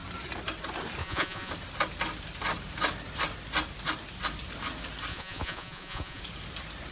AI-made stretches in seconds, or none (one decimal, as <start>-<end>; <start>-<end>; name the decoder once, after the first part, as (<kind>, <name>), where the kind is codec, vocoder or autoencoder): 1.0-1.5 (vocoder, Vocos); 5.1-6.2